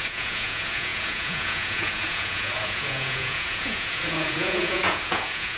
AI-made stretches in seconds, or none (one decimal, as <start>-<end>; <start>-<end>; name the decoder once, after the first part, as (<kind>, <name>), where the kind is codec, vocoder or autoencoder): 0.0-5.6 (vocoder, Vocos)